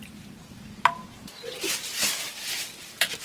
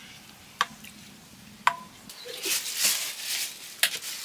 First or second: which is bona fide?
second